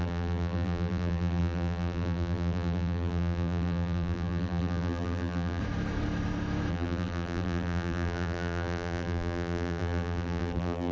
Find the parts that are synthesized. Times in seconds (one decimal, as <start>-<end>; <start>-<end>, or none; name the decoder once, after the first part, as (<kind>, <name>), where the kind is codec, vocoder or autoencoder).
0.0-5.6 (vocoder, BigVGAN v2); 6.7-10.9